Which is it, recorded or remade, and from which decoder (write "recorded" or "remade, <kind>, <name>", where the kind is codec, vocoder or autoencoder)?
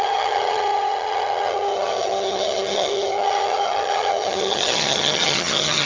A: remade, vocoder, HiFi-GAN